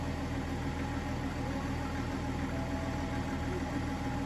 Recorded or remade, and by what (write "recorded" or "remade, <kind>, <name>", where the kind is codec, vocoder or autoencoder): recorded